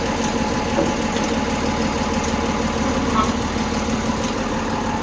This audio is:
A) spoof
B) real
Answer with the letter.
B